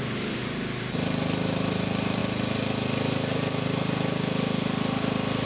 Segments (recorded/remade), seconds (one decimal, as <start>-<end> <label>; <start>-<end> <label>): 0.0-2.2 remade; 2.2-5.5 recorded